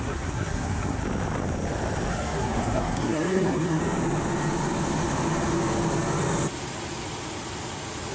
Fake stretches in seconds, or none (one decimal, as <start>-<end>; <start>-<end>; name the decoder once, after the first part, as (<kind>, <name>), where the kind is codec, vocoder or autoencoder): 0.0-1.0 (codec, SNAC); 2.1-3.8